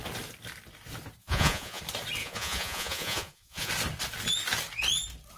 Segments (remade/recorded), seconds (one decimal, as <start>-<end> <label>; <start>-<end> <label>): 0.0-1.2 recorded; 1.2-1.8 remade; 1.8-2.2 recorded; 2.2-3.7 remade; 3.7-5.4 recorded